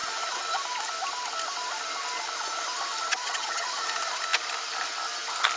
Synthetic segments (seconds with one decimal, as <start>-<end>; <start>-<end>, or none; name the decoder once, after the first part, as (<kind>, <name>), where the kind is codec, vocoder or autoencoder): 3.0-3.8 (vocoder, HiFi-GAN)